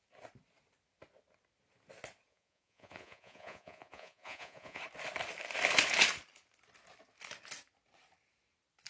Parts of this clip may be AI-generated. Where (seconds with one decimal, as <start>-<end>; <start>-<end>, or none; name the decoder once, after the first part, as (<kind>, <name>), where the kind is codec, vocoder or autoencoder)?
2.3-4.8 (vocoder, Vocos)